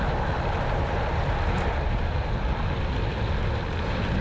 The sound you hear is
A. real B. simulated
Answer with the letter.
A